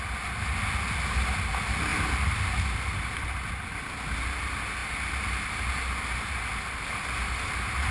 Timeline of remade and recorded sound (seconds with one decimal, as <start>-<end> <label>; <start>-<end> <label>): 0.0-7.9 recorded